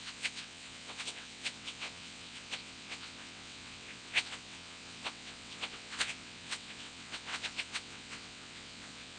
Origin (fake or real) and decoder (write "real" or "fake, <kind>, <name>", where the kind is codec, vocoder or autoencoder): fake, vocoder, WaveNeXt